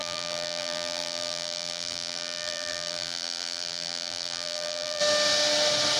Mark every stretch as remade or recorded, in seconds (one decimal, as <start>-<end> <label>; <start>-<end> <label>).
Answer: 0.0-5.0 remade; 5.0-6.0 recorded